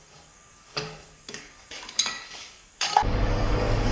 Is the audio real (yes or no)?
no